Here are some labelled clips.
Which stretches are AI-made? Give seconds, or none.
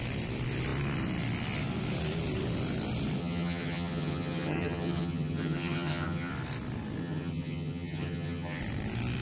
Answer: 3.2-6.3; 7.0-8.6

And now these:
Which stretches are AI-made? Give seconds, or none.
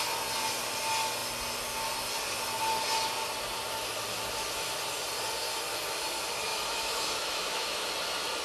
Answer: 6.5-7.9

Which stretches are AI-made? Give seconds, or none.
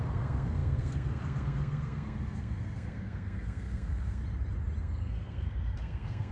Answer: 0.0-4.2; 4.8-6.3